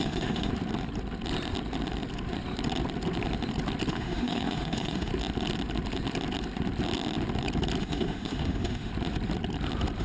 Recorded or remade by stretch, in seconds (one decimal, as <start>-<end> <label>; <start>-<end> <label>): 0.0-0.5 remade; 0.5-3.9 recorded; 3.9-5.1 remade; 5.1-7.8 recorded; 7.8-8.9 remade; 8.9-10.0 recorded

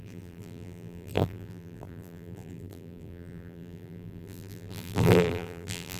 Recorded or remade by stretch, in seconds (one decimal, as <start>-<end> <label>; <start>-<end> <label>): 0.0-6.0 remade

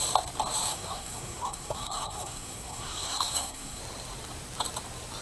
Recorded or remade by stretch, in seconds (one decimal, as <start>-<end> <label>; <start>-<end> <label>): 0.0-0.7 recorded; 0.7-3.8 remade; 3.8-5.2 recorded

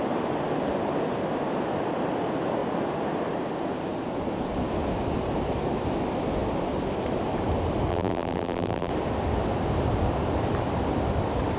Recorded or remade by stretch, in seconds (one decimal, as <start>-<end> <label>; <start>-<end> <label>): 0.0-7.9 recorded; 7.9-8.9 remade; 8.9-11.6 recorded

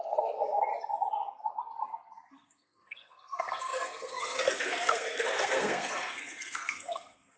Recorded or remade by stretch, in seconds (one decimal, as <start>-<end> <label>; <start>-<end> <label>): 0.0-0.7 remade; 0.7-2.3 recorded; 2.3-7.4 remade

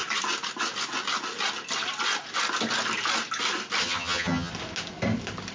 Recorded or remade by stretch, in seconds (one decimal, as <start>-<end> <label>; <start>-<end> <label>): 0.0-3.8 recorded; 3.8-4.5 remade; 4.5-5.5 recorded

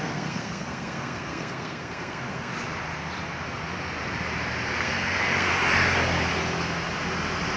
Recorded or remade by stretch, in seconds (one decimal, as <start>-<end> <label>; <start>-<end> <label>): 0.0-2.5 remade; 2.5-4.8 recorded; 4.8-5.5 remade; 5.5-7.6 recorded

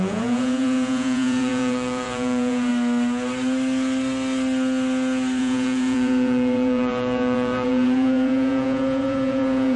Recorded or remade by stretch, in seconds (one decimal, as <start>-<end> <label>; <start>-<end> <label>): 0.0-2.7 remade; 2.7-5.4 recorded; 5.4-9.8 remade